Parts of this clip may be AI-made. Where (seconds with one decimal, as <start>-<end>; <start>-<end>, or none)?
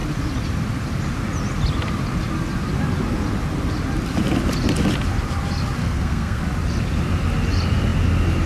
5.8-6.4